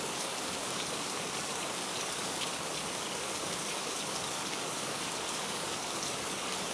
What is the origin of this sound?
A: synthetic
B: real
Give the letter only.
A